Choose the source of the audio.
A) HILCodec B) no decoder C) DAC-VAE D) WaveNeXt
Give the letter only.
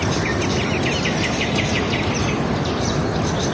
B